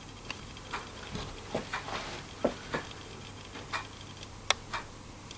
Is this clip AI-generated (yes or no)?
no